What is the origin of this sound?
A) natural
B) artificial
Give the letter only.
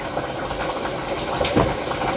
A